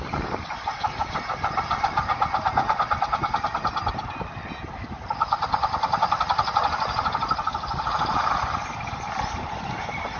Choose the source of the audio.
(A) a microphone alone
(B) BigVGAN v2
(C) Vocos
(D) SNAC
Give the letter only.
B